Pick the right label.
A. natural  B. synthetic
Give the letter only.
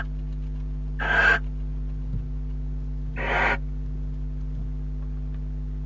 A